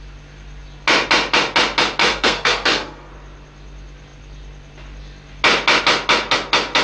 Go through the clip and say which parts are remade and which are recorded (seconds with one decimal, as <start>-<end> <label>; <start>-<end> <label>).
0.0-2.0 recorded; 2.0-3.1 remade; 3.1-6.8 recorded